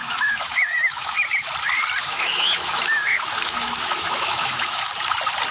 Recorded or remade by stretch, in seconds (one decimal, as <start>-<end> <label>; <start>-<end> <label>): 0.0-1.5 remade; 1.5-2.0 recorded; 2.0-4.9 remade; 4.9-5.5 recorded